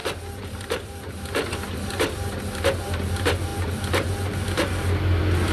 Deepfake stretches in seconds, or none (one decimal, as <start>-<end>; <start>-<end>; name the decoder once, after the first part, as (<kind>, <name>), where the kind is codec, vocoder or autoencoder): none